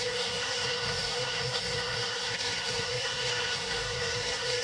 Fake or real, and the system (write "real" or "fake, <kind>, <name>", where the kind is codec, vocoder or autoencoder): fake, codec, SNAC